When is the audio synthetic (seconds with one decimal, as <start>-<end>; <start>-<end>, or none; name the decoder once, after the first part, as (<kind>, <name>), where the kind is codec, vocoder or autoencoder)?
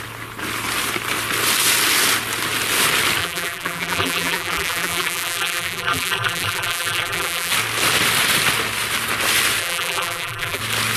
3.2-7.5 (vocoder, BigVGAN v2); 9.6-10.6